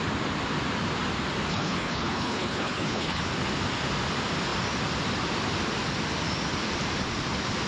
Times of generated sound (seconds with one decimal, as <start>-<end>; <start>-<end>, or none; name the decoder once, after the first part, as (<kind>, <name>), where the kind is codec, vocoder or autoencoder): 1.5-3.2 (codec, HILCodec)